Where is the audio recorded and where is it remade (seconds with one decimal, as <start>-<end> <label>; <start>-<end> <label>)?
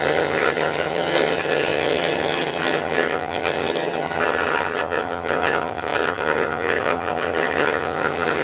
0.0-8.4 remade